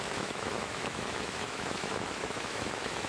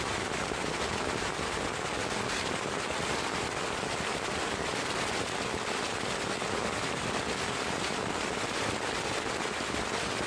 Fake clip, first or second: first